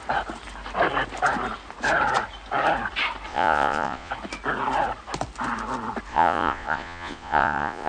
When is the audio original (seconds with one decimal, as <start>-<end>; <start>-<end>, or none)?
0.0-3.3; 4.1-6.1